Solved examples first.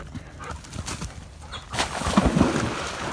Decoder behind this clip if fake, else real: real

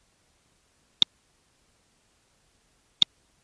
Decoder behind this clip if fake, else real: real